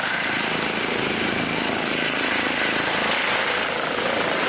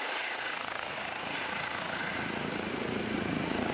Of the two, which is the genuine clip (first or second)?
first